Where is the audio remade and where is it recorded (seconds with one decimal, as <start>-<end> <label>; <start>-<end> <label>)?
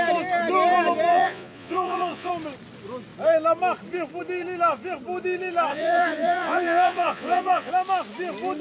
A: 0.0-1.1 recorded; 1.1-2.3 remade; 2.3-5.7 recorded; 5.7-7.7 remade; 7.7-8.6 recorded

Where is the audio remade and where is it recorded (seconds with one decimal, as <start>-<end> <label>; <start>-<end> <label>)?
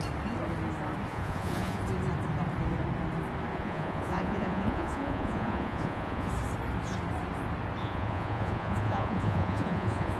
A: 0.0-1.1 recorded; 1.1-1.8 remade; 1.8-3.5 recorded; 3.5-6.3 remade; 6.3-7.8 recorded; 7.8-10.2 remade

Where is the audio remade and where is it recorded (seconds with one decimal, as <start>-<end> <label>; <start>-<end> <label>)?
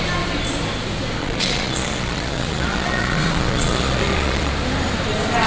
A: 0.0-1.2 recorded; 1.2-4.5 remade; 4.5-5.5 recorded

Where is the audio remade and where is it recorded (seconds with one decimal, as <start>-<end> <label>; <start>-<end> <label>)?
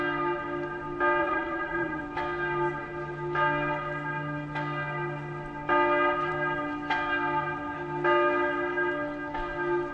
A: 0.0-1.2 recorded; 1.2-2.0 remade; 2.0-9.9 recorded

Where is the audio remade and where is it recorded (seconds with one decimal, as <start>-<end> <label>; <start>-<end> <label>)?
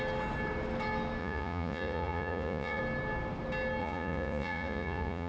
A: 0.0-1.2 recorded; 1.2-2.8 remade; 2.8-3.8 recorded; 3.8-5.3 remade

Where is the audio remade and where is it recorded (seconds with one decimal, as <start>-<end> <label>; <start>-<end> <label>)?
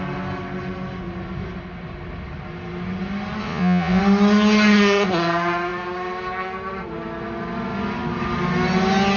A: 0.0-3.4 recorded; 3.4-4.0 remade; 4.0-9.2 recorded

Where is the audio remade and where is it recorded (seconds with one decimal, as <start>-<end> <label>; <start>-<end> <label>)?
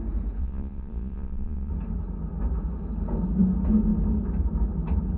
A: 0.0-0.4 recorded; 0.4-1.7 remade; 1.7-5.2 recorded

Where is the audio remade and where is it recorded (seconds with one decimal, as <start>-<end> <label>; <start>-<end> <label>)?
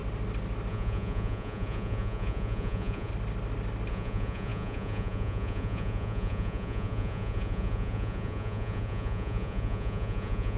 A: 0.0-0.7 recorded; 0.7-3.1 remade; 3.1-3.9 recorded; 3.9-10.6 remade